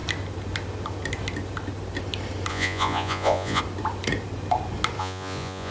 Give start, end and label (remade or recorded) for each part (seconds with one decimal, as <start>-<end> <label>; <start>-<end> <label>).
0.0-2.5 recorded; 2.5-3.6 remade; 3.6-5.0 recorded; 5.0-5.7 remade